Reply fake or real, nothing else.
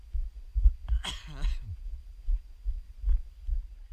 real